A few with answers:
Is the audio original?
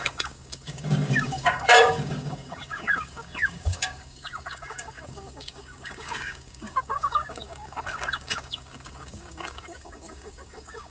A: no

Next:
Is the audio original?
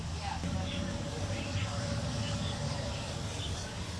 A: no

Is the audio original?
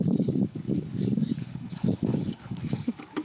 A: no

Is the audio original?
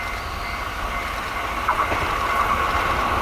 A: yes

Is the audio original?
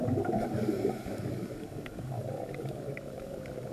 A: no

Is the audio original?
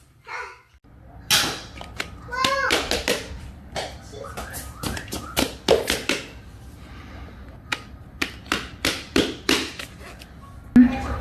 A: yes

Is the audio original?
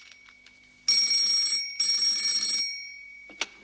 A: yes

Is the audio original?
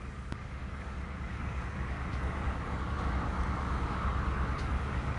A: no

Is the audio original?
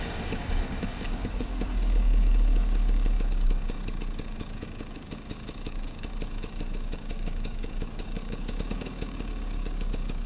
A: no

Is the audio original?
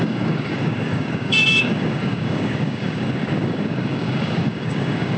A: no